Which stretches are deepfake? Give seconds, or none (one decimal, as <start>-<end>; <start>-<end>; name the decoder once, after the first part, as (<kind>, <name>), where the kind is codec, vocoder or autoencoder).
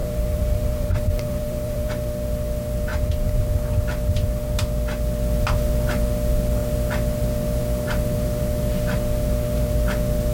0.0-1.9 (vocoder, BigVGAN v2); 2.9-3.4